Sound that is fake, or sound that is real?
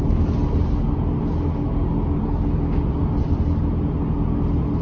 real